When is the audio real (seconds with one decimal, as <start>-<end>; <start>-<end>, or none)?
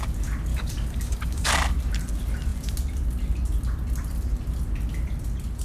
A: 0.0-0.5; 1.5-5.6